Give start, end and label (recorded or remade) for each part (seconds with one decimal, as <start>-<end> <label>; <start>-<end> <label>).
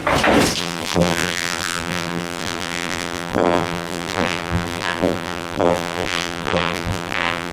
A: 0.0-0.6 recorded; 0.6-7.5 remade